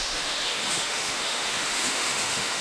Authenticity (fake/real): fake